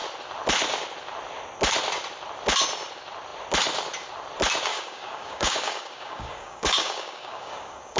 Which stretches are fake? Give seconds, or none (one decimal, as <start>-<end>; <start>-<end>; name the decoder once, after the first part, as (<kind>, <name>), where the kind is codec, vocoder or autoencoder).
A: 4.7-8.0 (codec, DAC)